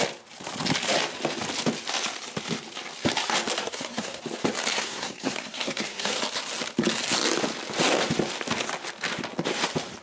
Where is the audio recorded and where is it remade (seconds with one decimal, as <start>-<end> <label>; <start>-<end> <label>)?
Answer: 0.0-3.6 recorded; 3.6-4.2 remade; 4.2-4.7 recorded; 4.7-6.2 remade; 6.2-10.0 recorded